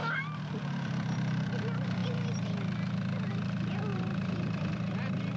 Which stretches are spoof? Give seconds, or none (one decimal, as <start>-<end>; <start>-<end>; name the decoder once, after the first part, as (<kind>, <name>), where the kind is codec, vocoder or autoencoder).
0.0-0.6 (vocoder, BigVGAN v2); 3.9-4.7